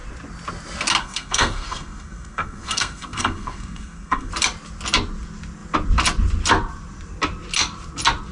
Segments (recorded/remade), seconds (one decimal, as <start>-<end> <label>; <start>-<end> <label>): 0.0-1.0 recorded; 1.0-4.3 remade; 4.3-8.3 recorded